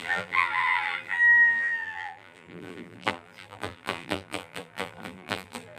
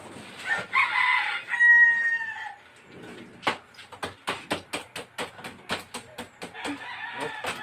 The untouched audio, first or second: second